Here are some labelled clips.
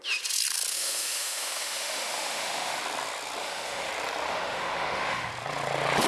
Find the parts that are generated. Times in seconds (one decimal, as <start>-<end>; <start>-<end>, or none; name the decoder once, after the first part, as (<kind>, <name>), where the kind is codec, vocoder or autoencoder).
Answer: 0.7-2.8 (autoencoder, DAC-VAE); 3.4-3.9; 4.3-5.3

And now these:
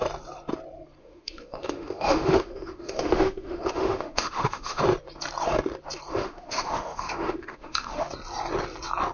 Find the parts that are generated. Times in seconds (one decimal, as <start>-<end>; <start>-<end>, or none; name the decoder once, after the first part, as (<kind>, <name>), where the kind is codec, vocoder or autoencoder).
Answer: 1.0-4.8 (autoencoder, DAC-VAE); 6.1-8.0

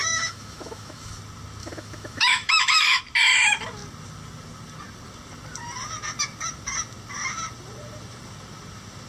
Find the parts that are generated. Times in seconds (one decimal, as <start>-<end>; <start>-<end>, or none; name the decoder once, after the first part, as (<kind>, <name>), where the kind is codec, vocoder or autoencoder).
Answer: 0.0-1.2 (autoencoder, DAC-VAE); 1.6-3.0

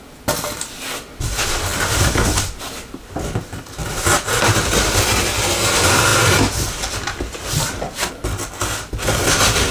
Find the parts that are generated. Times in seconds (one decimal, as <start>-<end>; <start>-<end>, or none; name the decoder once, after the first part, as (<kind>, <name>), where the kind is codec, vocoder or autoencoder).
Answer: none

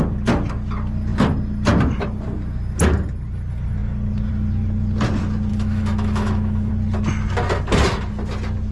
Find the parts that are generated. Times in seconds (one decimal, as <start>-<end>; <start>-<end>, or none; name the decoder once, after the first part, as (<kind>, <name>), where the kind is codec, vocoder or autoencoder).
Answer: 5.5-6.7 (autoencoder, DAC-VAE)

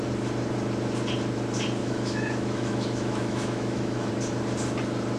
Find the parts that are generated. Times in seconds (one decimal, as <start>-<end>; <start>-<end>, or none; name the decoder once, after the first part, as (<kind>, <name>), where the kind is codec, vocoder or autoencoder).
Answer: 1.8-4.1 (autoencoder, DAC-VAE)

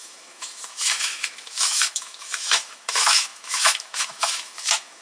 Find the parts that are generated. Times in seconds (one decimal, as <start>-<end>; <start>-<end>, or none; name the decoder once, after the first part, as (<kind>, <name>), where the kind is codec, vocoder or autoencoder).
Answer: 0.0-5.0 (autoencoder, DAC-VAE)

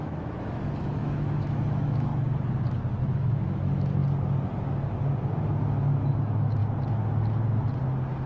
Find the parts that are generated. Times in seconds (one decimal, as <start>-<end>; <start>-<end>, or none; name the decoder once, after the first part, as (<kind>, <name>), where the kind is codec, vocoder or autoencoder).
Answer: 0.0-2.1 (autoencoder, DAC-VAE); 3.0-4.0; 6.1-6.6